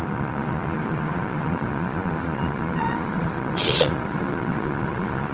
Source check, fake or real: fake